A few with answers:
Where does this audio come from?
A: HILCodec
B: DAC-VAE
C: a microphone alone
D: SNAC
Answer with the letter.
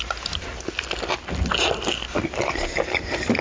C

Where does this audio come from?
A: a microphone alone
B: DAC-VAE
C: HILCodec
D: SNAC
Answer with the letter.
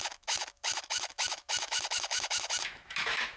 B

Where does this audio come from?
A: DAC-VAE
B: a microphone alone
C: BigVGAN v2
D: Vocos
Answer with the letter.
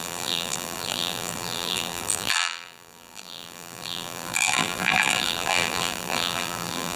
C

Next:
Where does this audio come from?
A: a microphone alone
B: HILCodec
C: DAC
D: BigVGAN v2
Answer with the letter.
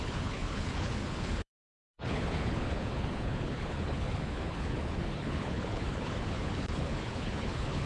B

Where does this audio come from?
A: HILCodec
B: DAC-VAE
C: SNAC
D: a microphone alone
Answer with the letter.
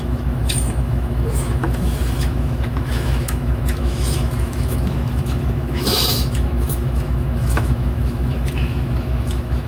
B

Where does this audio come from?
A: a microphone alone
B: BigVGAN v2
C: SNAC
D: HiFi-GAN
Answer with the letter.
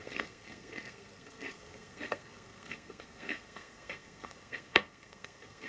C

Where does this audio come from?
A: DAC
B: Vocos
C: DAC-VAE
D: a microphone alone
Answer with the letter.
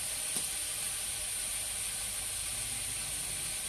D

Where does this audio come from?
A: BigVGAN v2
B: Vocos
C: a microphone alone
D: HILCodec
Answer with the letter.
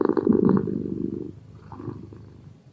C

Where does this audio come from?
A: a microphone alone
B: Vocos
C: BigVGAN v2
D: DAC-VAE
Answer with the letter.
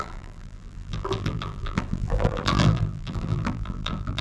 C